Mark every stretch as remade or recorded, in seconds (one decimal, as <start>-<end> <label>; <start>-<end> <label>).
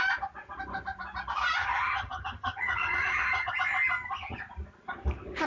0.0-1.6 recorded; 1.6-3.5 remade; 3.5-5.5 recorded